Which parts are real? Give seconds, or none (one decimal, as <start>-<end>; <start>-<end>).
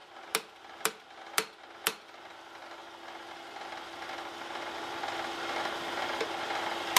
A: 0.0-7.0